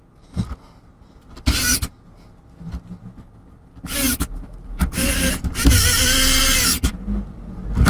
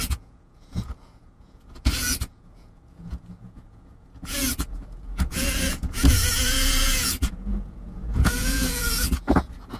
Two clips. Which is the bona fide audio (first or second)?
first